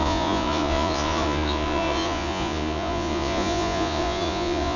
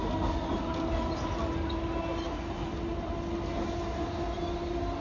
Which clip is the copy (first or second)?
first